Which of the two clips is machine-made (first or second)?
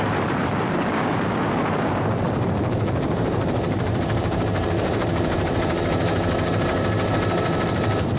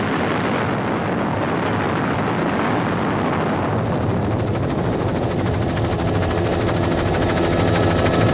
first